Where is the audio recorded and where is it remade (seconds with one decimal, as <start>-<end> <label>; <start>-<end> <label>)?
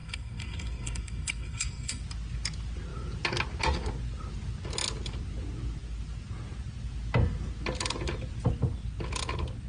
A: 0.0-2.0 remade; 2.0-9.7 recorded